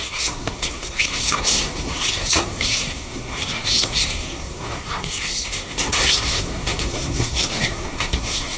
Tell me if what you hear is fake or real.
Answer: fake